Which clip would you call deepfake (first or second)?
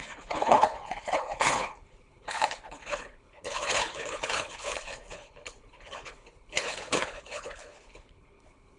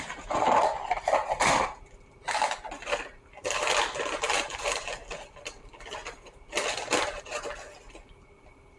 first